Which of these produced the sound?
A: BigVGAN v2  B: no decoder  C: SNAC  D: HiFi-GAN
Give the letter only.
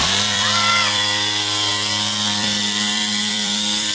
A